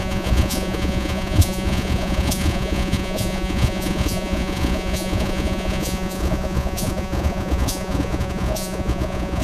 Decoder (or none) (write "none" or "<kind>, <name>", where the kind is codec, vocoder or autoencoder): vocoder, Vocos